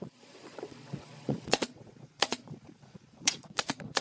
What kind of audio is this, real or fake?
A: fake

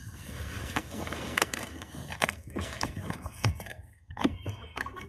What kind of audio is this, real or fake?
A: fake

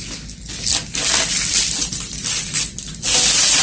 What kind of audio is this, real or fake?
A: real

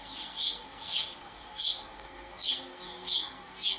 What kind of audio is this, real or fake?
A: fake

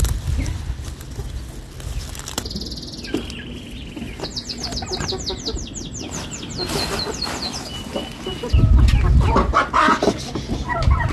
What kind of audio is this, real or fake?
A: real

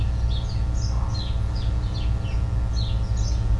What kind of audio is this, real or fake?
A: real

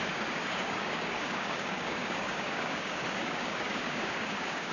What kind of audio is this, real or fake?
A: fake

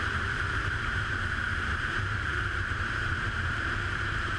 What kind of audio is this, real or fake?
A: fake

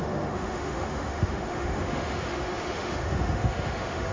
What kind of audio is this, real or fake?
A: fake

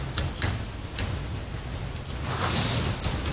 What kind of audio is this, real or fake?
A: real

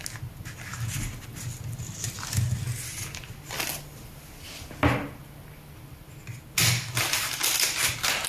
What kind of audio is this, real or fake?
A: real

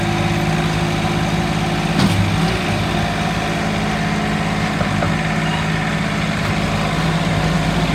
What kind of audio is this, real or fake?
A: real